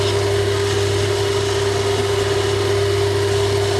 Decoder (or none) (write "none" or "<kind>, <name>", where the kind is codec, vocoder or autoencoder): none